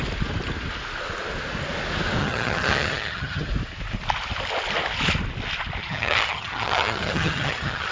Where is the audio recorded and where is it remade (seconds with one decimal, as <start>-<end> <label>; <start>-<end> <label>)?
0.0-2.2 recorded; 2.2-3.5 remade; 3.5-5.8 recorded; 5.8-7.9 remade